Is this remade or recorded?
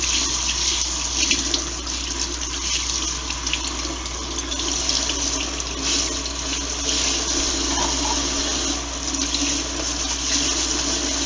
recorded